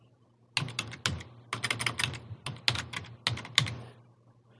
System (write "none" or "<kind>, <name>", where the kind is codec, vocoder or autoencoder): none